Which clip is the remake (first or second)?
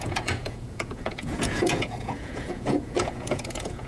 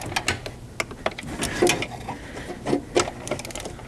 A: first